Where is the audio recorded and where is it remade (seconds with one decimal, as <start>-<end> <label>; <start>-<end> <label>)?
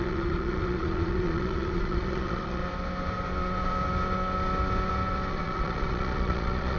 0.0-2.6 remade; 2.6-5.3 recorded; 5.3-6.8 remade